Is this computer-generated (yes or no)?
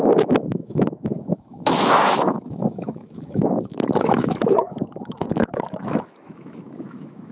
yes